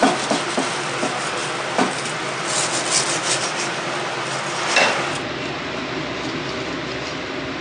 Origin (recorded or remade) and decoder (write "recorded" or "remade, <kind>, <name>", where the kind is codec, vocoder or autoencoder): recorded